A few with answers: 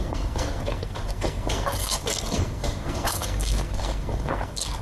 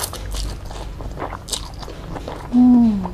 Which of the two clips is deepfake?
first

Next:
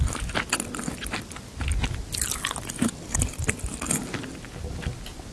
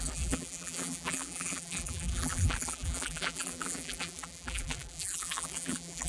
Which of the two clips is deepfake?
second